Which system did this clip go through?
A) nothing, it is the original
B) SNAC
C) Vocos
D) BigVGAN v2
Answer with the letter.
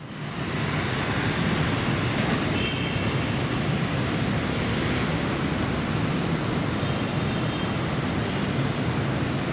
A